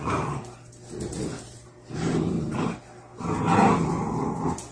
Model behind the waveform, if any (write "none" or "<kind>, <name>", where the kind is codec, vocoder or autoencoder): none